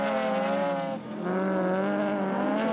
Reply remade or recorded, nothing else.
recorded